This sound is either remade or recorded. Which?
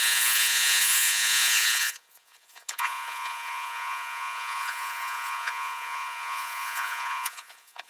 remade